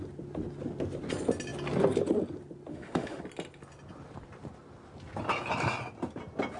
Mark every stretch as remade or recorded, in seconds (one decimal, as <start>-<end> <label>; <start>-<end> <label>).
0.0-2.7 recorded; 2.7-3.2 remade; 3.2-6.6 recorded